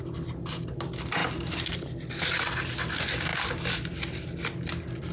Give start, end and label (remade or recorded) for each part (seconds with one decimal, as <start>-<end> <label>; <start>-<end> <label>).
0.0-5.1 recorded